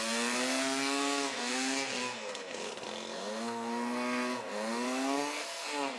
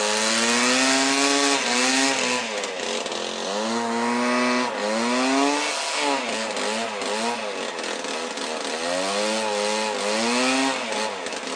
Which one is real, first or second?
second